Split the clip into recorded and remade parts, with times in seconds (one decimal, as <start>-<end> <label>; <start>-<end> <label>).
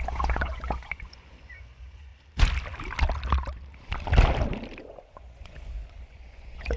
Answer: 0.0-2.1 remade; 2.1-4.8 recorded; 4.8-6.8 remade